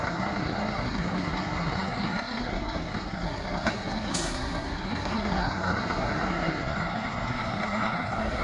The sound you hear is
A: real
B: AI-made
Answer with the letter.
B